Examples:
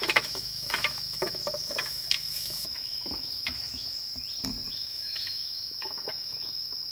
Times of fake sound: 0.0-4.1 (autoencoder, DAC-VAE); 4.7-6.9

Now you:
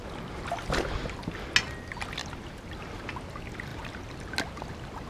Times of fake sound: none

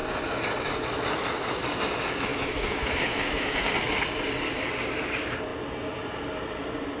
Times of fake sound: 2.3-3.7 (autoencoder, DAC-VAE)